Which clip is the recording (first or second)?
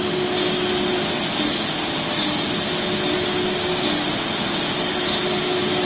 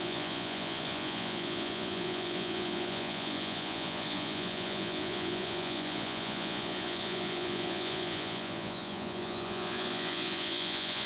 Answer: first